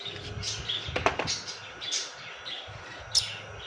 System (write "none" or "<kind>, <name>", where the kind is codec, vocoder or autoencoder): none